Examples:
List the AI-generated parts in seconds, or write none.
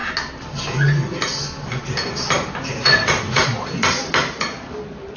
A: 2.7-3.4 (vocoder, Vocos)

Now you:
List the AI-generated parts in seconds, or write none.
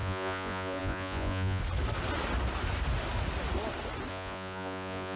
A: 0.0-1.6 (vocoder, Vocos); 4.1-5.2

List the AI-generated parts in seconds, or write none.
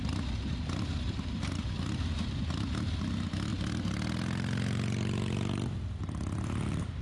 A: none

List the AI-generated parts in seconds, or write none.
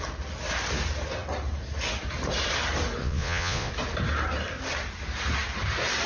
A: 3.0-3.7 (vocoder, Vocos)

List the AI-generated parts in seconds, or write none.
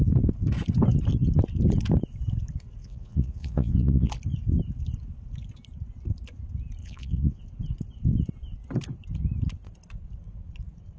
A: 2.8-4.1 (vocoder, Vocos); 6.8-7.4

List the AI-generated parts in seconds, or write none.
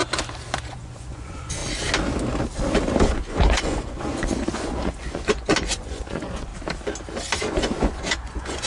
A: 0.6-1.6 (vocoder, Vocos); 3.0-6.5; 7.4-8.7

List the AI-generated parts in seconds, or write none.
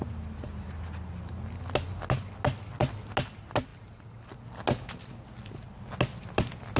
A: none